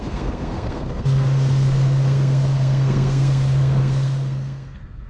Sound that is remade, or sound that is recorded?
remade